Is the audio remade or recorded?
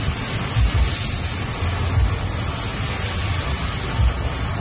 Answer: recorded